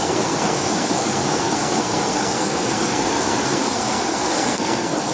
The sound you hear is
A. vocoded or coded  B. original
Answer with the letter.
A